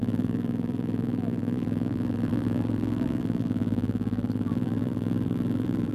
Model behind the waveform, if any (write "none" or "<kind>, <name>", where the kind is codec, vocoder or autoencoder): vocoder, BigVGAN v2